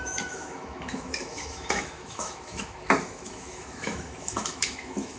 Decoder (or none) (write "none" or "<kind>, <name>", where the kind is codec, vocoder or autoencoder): autoencoder, DAC-VAE